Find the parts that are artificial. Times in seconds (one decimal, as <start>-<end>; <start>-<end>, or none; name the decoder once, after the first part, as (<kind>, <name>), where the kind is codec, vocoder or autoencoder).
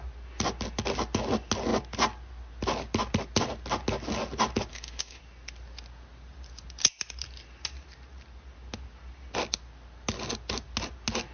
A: 4.7-5.2 (autoencoder, DAC-VAE)